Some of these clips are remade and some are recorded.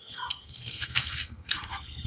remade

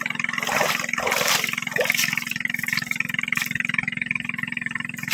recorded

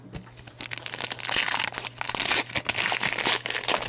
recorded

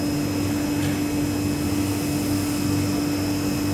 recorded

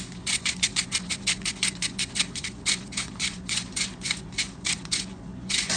remade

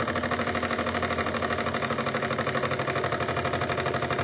recorded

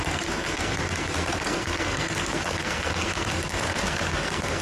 remade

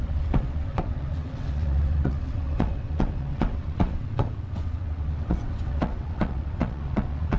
remade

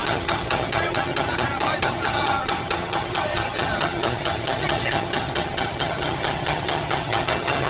remade